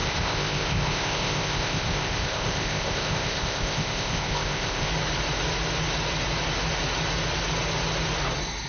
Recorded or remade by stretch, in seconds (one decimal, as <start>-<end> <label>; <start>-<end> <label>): 0.0-4.9 remade; 4.9-8.7 recorded